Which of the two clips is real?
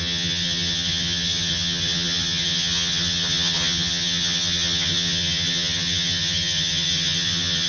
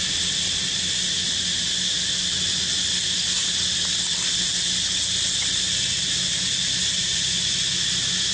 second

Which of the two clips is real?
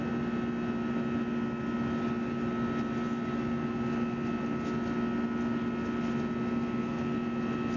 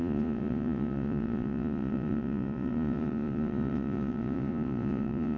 first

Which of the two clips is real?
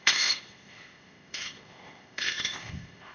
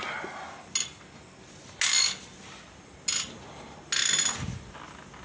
second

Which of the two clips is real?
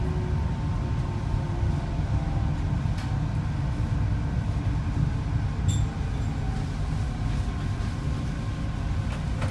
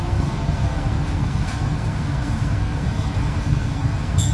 first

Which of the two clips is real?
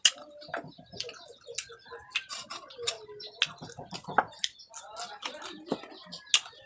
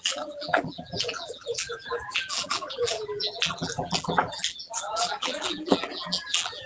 first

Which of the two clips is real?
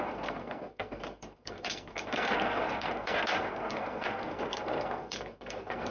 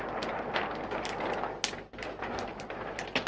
second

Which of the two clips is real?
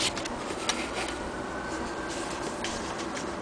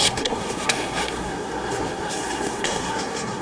first